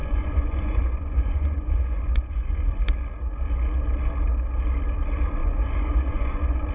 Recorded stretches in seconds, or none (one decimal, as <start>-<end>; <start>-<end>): 2.8-5.4